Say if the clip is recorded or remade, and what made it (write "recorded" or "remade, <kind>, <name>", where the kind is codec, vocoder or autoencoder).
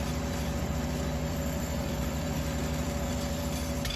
remade, vocoder, BigVGAN v2